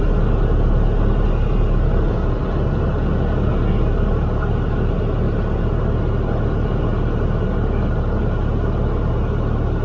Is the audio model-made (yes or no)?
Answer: no